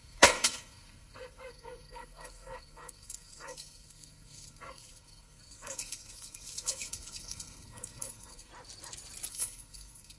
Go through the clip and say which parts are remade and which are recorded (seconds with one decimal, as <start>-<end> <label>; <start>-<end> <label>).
0.0-8.5 remade; 8.5-9.3 recorded; 9.3-10.2 remade